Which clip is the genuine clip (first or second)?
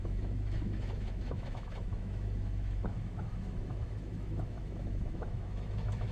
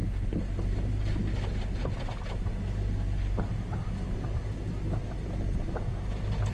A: second